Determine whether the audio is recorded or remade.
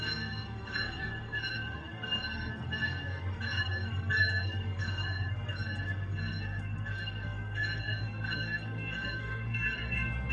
remade